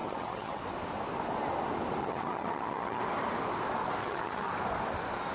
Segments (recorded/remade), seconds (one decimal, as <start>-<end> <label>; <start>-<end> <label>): 0.0-0.6 remade; 0.6-2.0 recorded; 2.0-3.0 remade; 3.0-4.0 recorded; 4.0-4.5 remade; 4.5-5.3 recorded